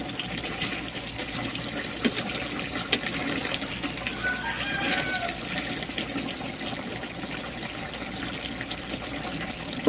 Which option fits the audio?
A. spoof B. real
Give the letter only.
B